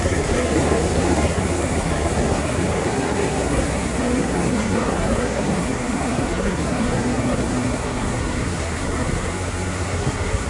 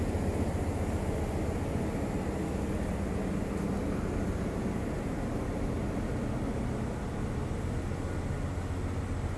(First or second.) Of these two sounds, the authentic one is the second